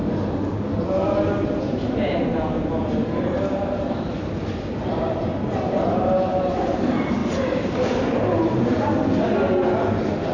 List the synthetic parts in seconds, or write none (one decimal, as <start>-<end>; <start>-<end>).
none